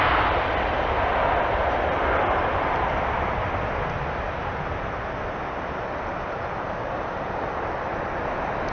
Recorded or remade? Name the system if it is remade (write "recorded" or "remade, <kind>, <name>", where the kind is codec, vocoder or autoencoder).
recorded